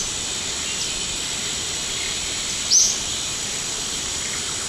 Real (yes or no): yes